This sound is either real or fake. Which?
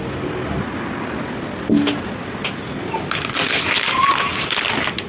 real